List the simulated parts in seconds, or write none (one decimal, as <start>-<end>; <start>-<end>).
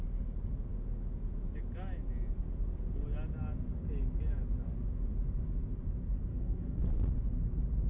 6.3-6.8